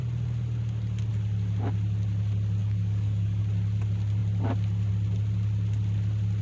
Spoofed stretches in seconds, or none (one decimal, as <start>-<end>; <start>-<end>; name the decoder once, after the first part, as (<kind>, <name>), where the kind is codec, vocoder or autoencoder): 2.6-3.4 (codec, DAC)